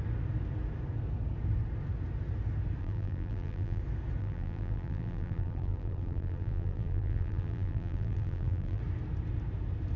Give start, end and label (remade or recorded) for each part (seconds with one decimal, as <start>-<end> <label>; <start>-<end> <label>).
0.0-2.8 recorded; 2.8-3.8 remade; 3.8-4.2 recorded; 4.2-8.8 remade; 8.8-10.0 recorded